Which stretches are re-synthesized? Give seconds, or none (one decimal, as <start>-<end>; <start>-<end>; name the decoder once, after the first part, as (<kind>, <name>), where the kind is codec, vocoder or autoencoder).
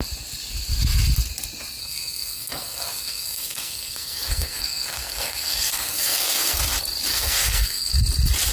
1.8-6.6 (codec, SNAC); 7.1-7.9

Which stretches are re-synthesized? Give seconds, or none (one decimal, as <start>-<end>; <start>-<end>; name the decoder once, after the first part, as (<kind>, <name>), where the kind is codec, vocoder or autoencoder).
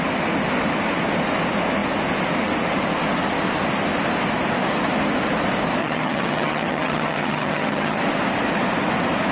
5.8-8.0 (vocoder, HiFi-GAN)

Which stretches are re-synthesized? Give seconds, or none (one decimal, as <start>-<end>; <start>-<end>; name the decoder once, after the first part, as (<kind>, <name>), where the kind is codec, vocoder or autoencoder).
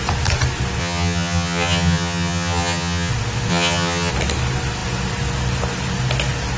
0.8-3.1 (vocoder, HiFi-GAN); 3.5-4.1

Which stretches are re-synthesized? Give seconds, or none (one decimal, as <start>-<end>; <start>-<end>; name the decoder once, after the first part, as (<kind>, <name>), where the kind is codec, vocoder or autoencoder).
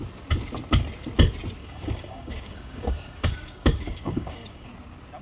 1.6-4.7 (codec, DAC)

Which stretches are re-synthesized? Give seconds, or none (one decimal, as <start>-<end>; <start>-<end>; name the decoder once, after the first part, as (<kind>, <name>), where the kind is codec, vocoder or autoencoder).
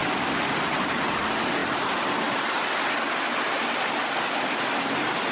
none